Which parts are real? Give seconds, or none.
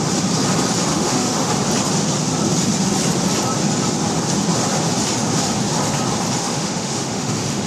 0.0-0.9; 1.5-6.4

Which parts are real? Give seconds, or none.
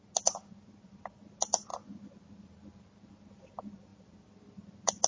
0.0-5.1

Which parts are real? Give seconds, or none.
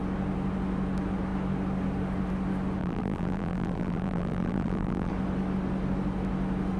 0.0-2.8; 5.1-6.8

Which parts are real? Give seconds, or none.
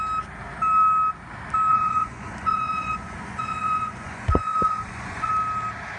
0.0-1.7; 5.3-6.0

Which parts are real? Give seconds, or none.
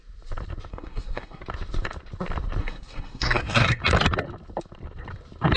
0.0-0.7; 1.4-2.6; 3.8-5.6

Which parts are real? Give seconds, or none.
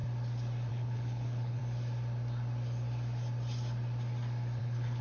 0.0-0.7; 1.6-4.6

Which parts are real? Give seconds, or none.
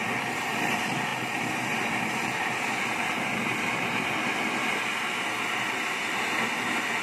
0.0-7.0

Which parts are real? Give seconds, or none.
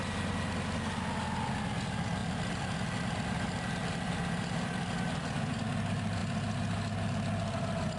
0.0-8.0